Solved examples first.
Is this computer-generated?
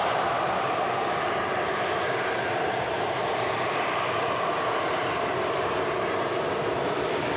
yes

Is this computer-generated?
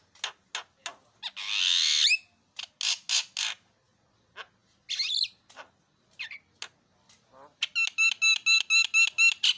no